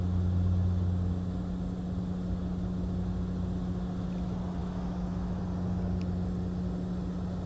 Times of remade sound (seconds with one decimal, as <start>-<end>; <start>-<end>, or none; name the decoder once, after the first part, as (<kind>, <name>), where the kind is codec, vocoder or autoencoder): 4.6-5.4 (autoencoder, DAC-VAE)